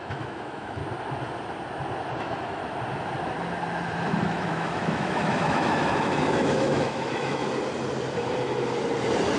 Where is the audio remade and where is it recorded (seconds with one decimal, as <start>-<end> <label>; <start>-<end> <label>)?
0.0-0.8 remade; 0.8-2.2 recorded; 2.2-2.6 remade; 2.6-4.2 recorded; 4.2-7.4 remade; 7.4-9.4 recorded